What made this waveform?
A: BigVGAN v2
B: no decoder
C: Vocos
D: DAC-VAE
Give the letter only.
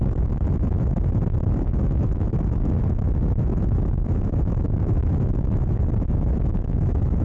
D